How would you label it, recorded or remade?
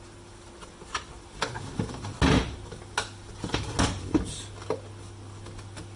recorded